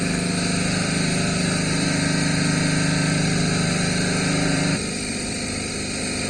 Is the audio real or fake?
fake